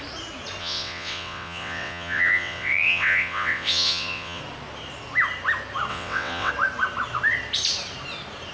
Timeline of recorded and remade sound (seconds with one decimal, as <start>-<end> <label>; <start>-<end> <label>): 0.0-0.6 recorded; 0.6-4.4 remade; 4.4-5.9 recorded; 5.9-6.5 remade; 6.5-8.5 recorded